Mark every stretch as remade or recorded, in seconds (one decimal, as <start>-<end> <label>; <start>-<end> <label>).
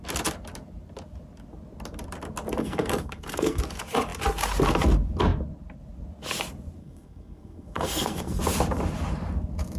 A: 0.0-2.6 recorded; 2.6-3.6 remade; 3.6-6.8 recorded; 6.8-8.4 remade; 8.4-9.8 recorded